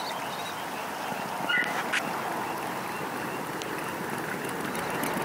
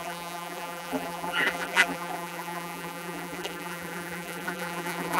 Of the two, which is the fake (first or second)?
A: second